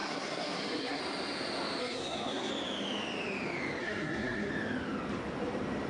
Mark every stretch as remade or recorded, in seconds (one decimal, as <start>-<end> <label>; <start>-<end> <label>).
0.0-1.0 remade; 1.0-1.8 recorded; 1.8-2.5 remade; 2.5-3.8 recorded; 3.8-4.5 remade; 4.5-5.9 recorded